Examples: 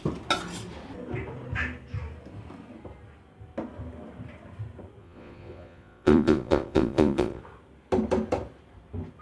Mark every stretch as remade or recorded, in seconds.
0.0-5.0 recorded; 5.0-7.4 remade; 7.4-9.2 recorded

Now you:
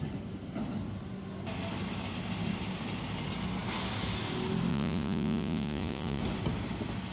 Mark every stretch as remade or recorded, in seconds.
0.0-4.7 recorded; 4.7-6.2 remade; 6.2-7.1 recorded